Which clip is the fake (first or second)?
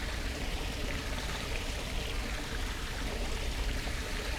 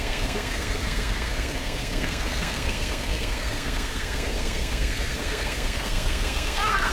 second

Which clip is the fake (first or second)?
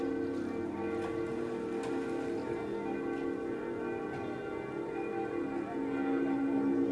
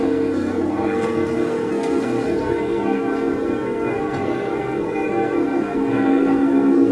second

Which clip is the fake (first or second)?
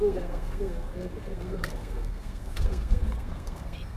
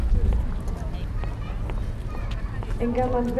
first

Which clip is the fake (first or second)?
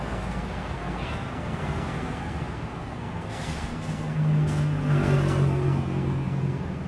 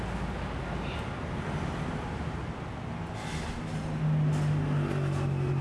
first